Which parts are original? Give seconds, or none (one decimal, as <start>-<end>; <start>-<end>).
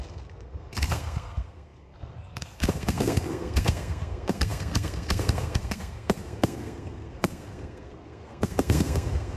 none